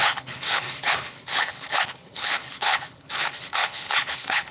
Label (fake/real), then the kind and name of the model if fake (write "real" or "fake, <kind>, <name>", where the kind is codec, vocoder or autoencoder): fake, codec, HILCodec